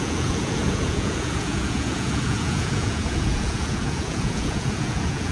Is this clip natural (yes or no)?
no